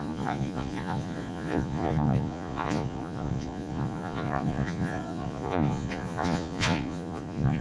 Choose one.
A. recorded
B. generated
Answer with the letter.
B